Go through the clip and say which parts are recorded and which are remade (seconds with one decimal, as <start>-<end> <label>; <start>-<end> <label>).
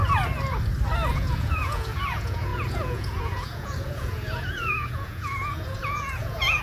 0.0-1.1 recorded; 1.1-6.6 remade